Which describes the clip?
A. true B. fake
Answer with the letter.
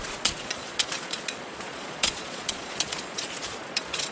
B